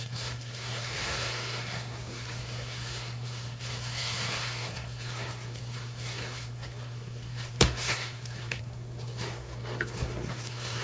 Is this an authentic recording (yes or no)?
no